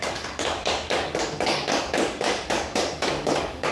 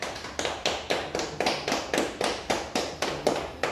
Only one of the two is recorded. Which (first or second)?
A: second